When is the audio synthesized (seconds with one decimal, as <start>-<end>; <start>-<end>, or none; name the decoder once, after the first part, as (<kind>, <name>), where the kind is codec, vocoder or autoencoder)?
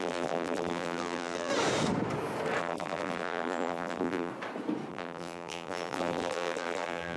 0.0-1.5 (vocoder, BigVGAN v2); 2.6-4.3; 4.9-7.2